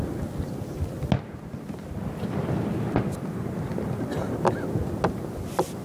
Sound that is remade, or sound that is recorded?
recorded